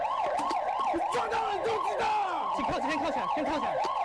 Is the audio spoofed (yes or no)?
no